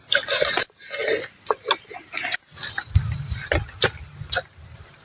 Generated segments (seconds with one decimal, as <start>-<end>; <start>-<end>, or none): none